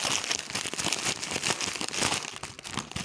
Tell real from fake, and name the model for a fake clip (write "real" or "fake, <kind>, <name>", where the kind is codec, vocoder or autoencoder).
real